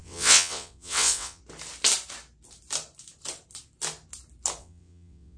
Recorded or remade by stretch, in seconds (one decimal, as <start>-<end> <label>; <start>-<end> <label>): 0.0-1.4 remade; 1.4-4.6 recorded; 4.6-5.4 remade